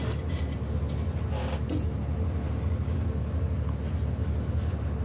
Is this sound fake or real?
real